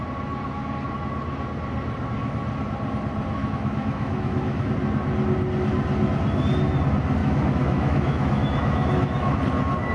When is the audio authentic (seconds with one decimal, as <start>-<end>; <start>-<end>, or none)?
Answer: 0.0-3.4; 4.7-7.2; 9.4-9.9